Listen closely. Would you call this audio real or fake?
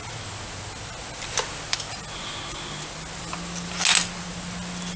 real